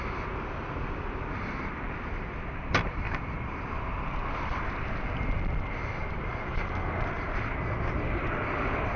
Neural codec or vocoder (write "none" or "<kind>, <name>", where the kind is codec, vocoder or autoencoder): vocoder, BigVGAN v2